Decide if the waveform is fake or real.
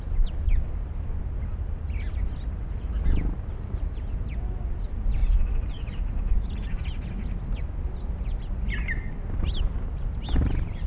real